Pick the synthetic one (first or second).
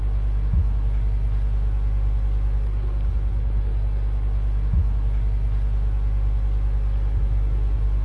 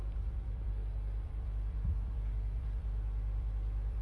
second